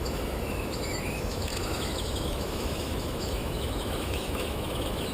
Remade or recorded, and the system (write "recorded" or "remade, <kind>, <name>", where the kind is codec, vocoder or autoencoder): remade, autoencoder, DAC-VAE